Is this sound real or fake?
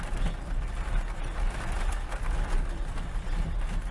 real